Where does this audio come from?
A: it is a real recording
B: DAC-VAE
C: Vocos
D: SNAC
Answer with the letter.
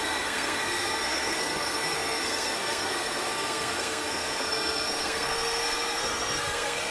D